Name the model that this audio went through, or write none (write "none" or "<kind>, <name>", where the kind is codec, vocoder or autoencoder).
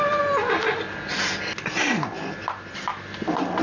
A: none